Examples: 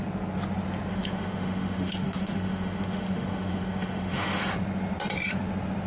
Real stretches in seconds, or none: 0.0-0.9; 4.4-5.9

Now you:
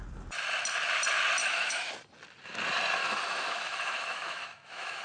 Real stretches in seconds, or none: 0.0-1.4; 1.9-3.0

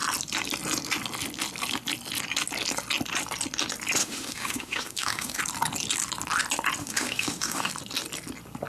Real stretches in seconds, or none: 0.0-4.0; 5.4-6.8; 7.7-8.7